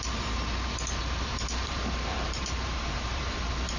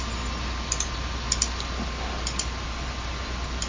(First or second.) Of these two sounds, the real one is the second